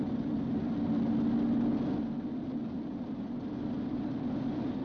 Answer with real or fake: real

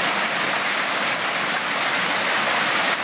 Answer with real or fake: real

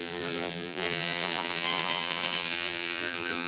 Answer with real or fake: fake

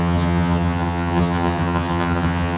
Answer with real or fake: fake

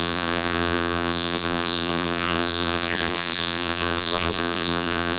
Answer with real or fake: fake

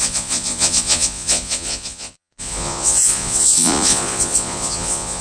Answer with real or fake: fake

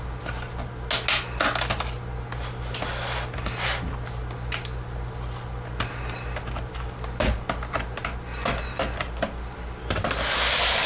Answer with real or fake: real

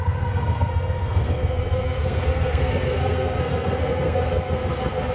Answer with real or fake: fake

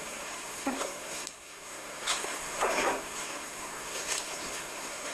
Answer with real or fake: fake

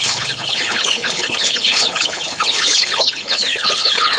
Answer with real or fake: fake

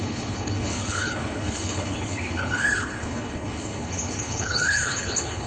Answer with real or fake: fake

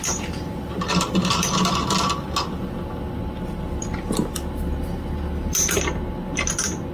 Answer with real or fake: real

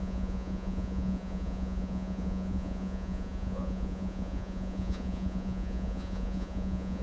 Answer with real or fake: fake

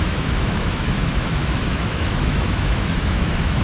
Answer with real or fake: fake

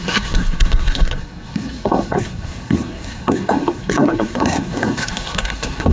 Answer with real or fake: fake